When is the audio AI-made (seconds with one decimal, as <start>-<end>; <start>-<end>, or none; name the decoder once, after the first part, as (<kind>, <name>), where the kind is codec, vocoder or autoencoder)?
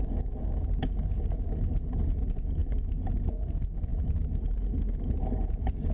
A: none